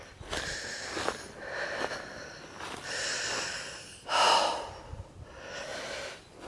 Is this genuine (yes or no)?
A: yes